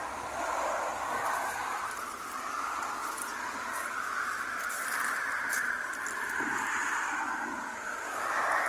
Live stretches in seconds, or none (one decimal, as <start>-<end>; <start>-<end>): 0.0-8.7